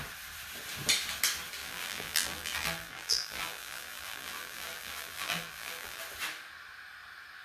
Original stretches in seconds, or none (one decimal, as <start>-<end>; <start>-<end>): 0.0-1.6; 6.0-7.4